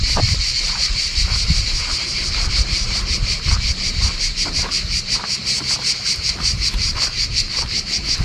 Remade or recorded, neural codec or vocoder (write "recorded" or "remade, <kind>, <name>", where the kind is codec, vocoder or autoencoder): remade, vocoder, BigVGAN v2